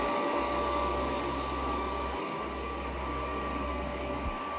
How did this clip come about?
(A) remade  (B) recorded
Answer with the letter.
A